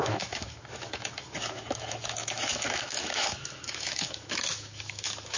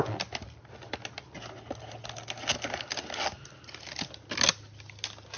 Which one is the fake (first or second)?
first